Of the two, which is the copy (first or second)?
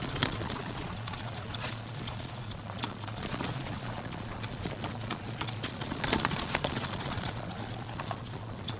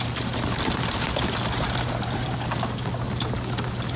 first